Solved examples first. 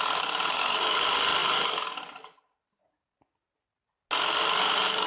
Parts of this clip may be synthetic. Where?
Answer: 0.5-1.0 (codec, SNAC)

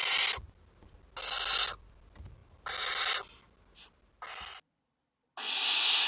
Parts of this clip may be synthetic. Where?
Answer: none